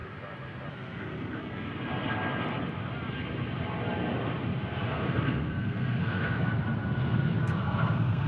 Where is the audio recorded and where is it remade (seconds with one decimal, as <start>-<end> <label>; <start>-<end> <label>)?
0.0-0.7 recorded; 0.7-1.7 remade; 1.7-4.8 recorded; 4.8-6.5 remade; 6.5-7.4 recorded; 7.4-8.3 remade